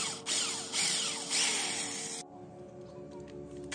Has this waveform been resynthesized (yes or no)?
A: no